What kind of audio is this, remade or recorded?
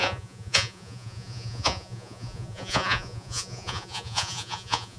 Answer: remade